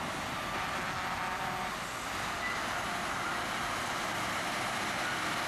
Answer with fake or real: real